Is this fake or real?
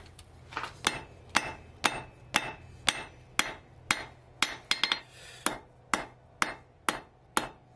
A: real